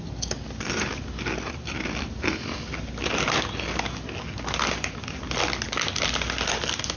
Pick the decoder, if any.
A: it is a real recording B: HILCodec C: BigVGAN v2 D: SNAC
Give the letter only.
A